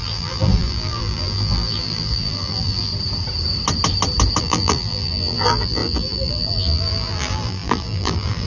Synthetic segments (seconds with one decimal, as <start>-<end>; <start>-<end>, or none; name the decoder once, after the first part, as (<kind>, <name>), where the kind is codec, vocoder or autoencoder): 0.0-2.9 (vocoder, BigVGAN v2); 4.4-8.5